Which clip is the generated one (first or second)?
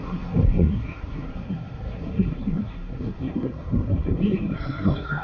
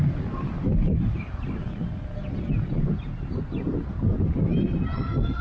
first